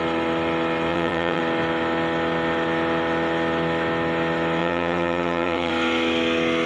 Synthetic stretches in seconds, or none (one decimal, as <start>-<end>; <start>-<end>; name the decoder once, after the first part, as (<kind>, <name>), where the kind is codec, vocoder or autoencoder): 0.9-1.4 (vocoder, WaveNeXt); 4.6-5.7